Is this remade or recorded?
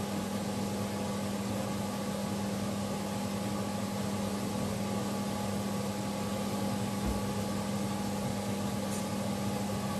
recorded